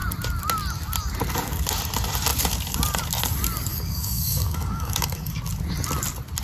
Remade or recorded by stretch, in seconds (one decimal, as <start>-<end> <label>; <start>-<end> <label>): 0.0-3.7 recorded; 3.7-5.4 remade; 5.4-6.4 recorded